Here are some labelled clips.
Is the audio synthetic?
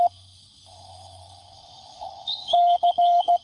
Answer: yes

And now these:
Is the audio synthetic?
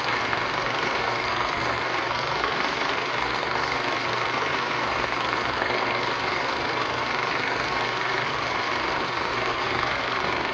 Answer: yes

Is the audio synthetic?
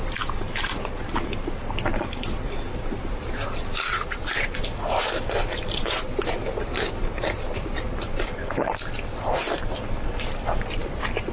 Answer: yes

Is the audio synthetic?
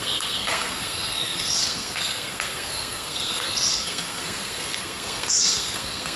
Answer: yes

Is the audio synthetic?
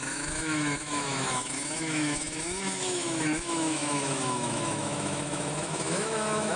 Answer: yes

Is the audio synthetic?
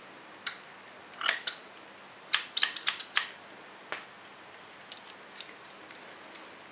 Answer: no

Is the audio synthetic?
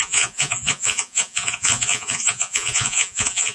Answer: yes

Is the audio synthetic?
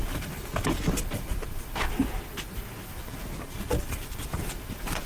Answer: no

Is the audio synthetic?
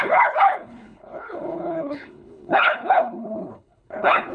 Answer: yes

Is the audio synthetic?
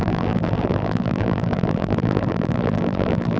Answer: yes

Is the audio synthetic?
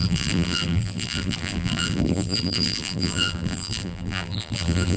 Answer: yes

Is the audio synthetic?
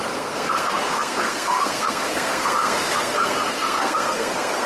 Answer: yes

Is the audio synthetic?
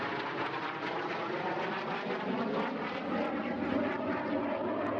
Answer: no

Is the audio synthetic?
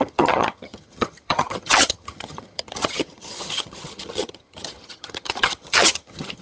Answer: yes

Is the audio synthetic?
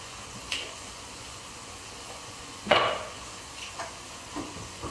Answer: yes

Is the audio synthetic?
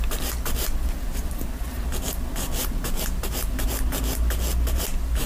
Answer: no